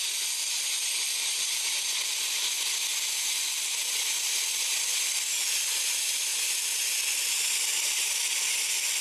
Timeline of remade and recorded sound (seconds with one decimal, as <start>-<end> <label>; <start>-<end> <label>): 0.0-6.3 remade; 6.3-7.2 recorded; 7.2-9.0 remade